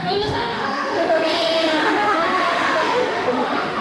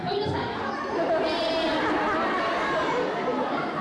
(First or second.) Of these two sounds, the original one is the second